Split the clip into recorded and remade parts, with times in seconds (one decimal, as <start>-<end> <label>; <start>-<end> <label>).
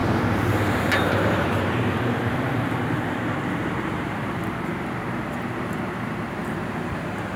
0.0-4.4 remade; 4.4-7.4 recorded